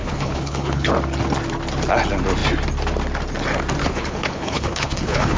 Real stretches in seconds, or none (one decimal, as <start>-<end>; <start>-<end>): 0.9-3.8